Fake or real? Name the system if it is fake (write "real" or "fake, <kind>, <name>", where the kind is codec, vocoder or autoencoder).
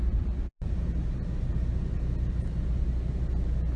real